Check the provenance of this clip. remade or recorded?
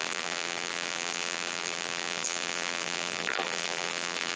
remade